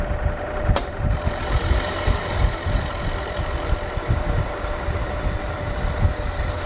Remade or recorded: remade